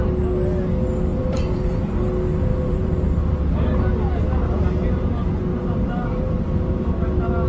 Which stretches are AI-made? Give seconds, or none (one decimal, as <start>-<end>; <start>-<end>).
1.1-2.0; 2.5-3.0; 5.5-7.0